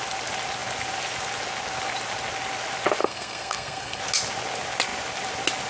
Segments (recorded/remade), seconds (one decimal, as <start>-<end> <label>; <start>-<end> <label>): 0.0-3.0 recorded; 3.0-4.0 remade; 4.0-5.7 recorded